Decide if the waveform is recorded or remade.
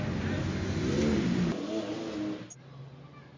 recorded